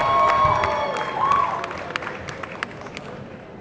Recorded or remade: recorded